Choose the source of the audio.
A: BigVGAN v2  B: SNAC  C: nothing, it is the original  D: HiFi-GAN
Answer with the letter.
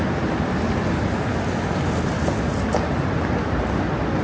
C